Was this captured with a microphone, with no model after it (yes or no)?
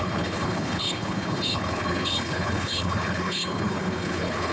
no